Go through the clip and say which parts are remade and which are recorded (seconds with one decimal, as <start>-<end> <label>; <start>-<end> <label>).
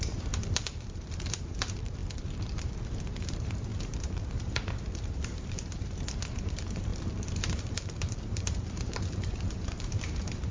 0.0-2.0 remade; 2.0-3.0 recorded; 3.0-6.9 remade; 6.9-7.5 recorded; 7.5-10.5 remade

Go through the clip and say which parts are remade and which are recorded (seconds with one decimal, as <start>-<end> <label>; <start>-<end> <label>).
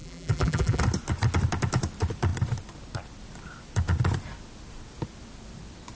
0.0-0.8 remade; 0.8-5.9 recorded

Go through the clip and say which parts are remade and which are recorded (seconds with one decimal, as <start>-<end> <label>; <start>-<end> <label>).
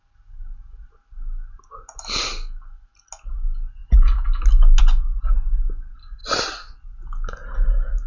0.0-8.1 recorded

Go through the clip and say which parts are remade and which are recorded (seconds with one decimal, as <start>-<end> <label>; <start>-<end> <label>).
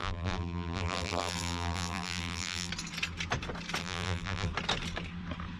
0.0-2.7 remade; 2.7-3.8 recorded; 3.8-4.5 remade; 4.5-5.6 recorded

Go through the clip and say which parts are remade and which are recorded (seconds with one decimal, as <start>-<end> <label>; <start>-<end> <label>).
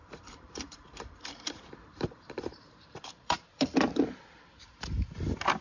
0.0-3.4 remade; 3.4-5.6 recorded